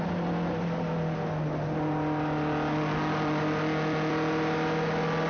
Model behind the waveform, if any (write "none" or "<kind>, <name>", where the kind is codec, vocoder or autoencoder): none